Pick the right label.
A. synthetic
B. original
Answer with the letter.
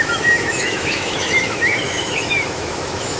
A